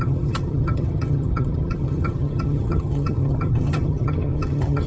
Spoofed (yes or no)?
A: yes